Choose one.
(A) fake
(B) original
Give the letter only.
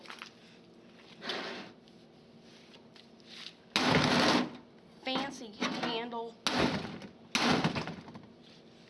B